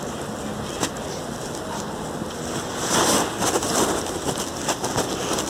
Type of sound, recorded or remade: recorded